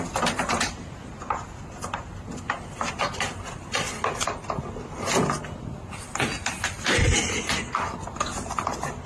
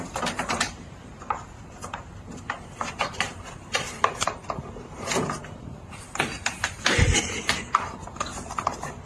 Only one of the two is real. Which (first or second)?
first